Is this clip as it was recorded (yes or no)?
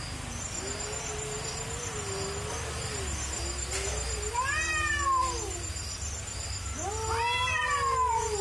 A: yes